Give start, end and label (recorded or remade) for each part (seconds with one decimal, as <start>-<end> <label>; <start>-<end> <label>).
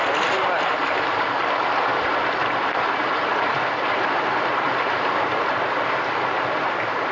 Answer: 0.0-1.9 recorded; 1.9-6.2 remade; 6.2-7.1 recorded